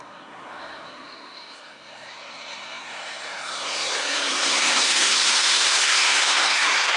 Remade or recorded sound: remade